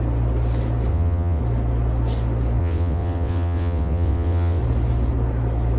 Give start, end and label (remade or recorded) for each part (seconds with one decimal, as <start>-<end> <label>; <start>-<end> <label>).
0.0-0.9 recorded; 0.9-1.4 remade; 1.4-2.6 recorded; 2.6-4.6 remade; 4.6-5.8 recorded